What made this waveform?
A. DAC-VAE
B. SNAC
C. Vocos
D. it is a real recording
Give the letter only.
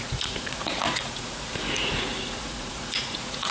C